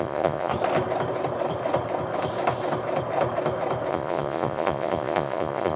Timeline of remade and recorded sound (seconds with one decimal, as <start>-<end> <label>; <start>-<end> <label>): 0.0-0.5 remade; 0.5-3.9 recorded; 3.9-5.8 remade